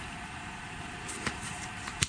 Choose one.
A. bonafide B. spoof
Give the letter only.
B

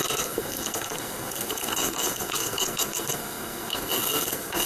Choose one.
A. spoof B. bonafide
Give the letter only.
A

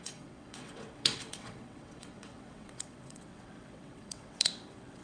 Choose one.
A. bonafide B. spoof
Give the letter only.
B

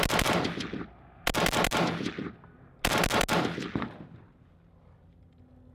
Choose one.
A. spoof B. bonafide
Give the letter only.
B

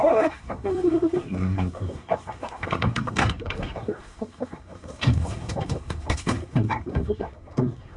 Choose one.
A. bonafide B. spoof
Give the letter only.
B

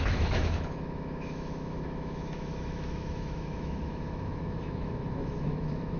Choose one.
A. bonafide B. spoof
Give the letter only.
B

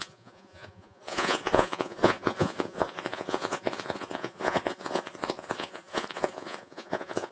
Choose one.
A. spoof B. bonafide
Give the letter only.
A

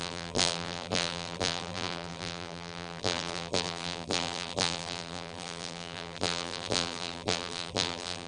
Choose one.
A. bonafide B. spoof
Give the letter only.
B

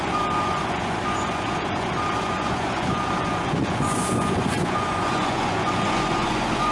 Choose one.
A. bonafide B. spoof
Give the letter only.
B